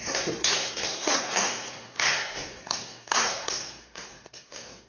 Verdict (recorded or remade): remade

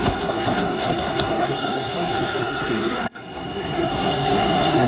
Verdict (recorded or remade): remade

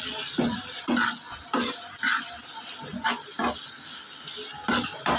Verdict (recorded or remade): recorded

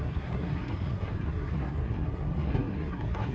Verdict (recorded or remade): remade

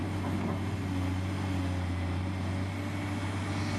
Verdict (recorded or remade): recorded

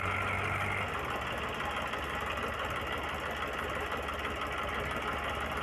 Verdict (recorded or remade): recorded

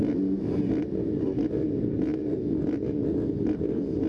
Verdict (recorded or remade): recorded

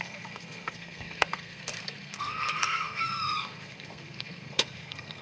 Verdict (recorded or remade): remade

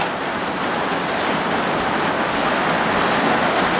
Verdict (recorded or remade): recorded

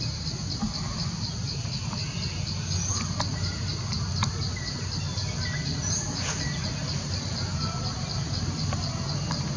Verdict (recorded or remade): recorded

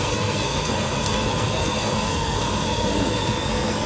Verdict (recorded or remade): remade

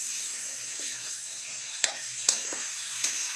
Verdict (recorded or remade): remade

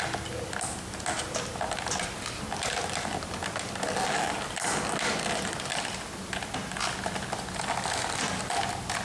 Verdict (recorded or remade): recorded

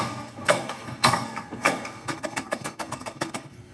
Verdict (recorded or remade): remade